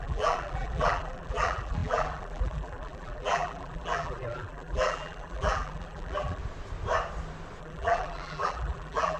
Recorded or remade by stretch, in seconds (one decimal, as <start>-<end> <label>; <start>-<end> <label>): 0.0-6.4 remade; 6.4-7.6 recorded; 7.6-9.2 remade